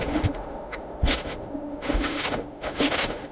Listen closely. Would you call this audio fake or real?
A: fake